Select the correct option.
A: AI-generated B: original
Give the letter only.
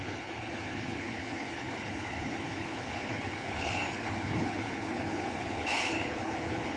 A